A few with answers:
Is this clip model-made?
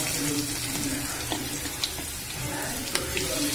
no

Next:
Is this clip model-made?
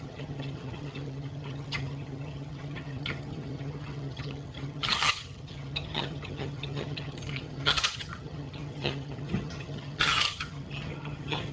yes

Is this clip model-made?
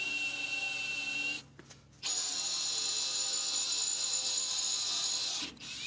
no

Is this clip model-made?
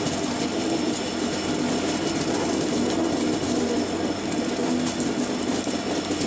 no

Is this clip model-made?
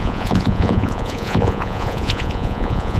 yes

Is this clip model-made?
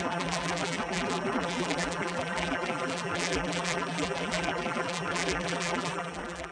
yes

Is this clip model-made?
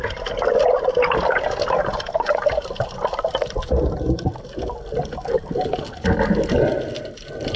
no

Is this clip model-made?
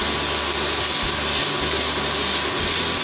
no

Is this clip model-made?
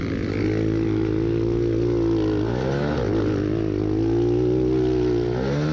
no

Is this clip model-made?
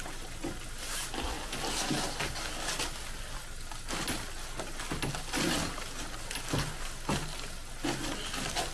no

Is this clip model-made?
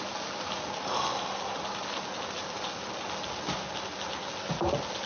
no